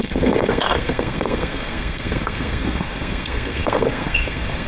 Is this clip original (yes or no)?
no